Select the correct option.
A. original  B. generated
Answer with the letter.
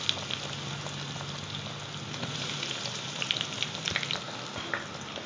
A